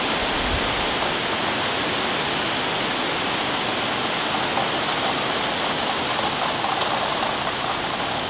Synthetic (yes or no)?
no